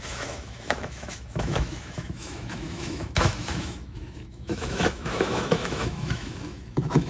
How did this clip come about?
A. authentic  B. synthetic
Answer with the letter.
B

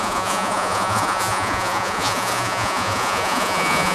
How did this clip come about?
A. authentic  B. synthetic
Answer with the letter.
B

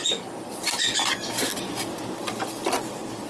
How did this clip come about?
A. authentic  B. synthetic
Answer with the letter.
A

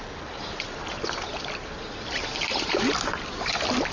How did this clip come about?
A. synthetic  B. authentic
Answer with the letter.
B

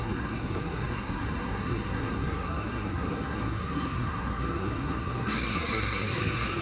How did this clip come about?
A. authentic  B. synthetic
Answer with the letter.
B